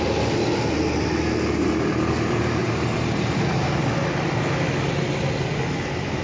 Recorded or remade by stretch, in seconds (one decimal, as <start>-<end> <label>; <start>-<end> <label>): 0.0-6.2 recorded

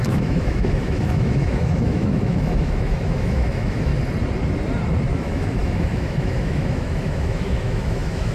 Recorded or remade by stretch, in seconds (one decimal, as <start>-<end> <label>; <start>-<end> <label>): 0.0-3.9 remade; 3.9-5.1 recorded; 5.1-8.3 remade

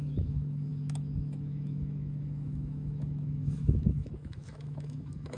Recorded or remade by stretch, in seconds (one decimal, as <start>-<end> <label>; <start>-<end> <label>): 0.0-5.4 remade

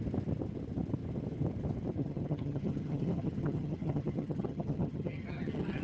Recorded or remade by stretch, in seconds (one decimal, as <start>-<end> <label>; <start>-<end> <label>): 0.0-2.0 recorded; 2.0-5.8 remade

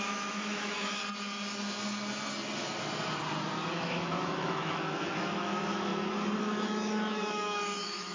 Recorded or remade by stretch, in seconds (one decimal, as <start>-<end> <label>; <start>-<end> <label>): 0.0-1.0 remade; 1.0-3.7 recorded; 3.7-5.9 remade; 5.9-6.4 recorded; 6.4-8.1 remade